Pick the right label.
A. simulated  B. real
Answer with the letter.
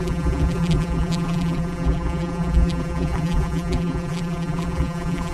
A